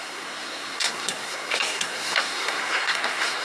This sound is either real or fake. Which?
fake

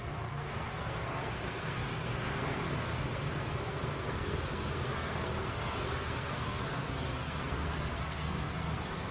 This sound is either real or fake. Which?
fake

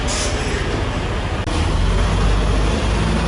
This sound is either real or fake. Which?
real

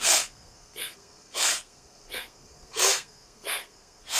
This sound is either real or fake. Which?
fake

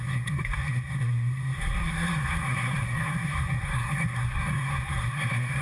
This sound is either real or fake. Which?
fake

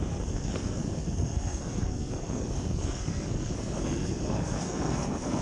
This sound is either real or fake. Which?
fake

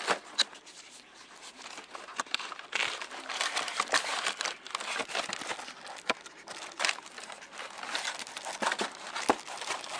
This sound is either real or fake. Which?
real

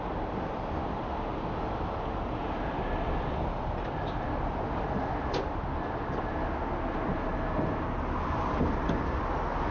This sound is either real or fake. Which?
real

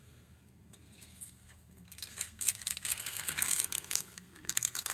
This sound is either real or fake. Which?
fake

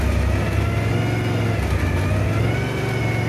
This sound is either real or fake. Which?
real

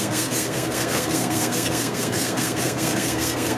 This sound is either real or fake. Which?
fake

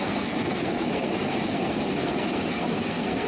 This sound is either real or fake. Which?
fake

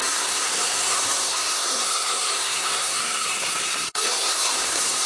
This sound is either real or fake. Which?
fake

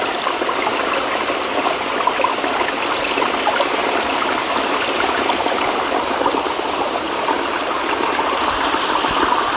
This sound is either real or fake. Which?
real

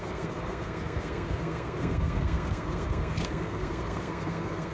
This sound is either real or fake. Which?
fake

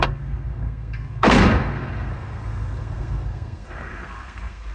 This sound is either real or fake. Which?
fake